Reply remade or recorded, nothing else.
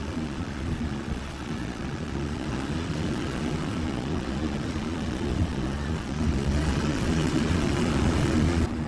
remade